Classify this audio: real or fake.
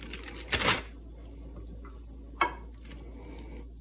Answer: real